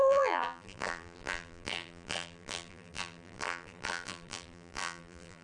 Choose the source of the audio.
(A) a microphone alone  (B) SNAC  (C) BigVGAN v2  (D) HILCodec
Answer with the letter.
C